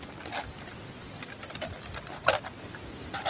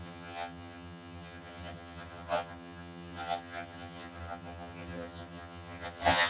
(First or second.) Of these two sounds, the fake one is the second